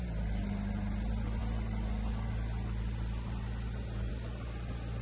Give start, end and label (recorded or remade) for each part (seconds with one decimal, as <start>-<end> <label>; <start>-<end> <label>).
0.0-5.0 recorded